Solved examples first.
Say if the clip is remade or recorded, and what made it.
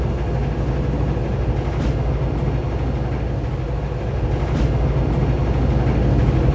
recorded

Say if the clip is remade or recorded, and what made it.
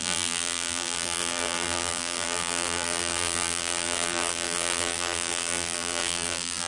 remade, vocoder, BigVGAN v2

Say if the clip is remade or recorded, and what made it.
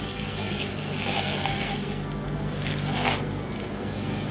remade, codec, SNAC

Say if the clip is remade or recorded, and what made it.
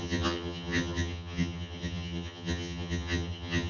remade, vocoder, HiFi-GAN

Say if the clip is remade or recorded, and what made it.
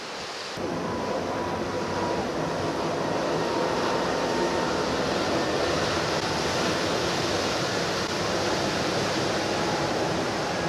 recorded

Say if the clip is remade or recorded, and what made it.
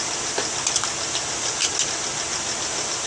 recorded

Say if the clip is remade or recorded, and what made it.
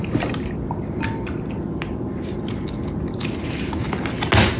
recorded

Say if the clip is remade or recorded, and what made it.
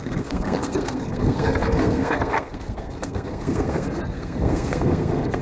remade, codec, SNAC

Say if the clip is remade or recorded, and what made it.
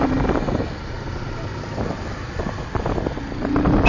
recorded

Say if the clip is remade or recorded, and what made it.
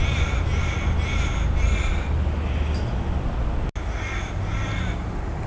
recorded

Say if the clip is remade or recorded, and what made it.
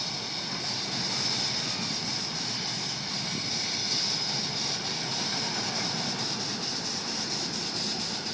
remade, vocoder, BigVGAN v2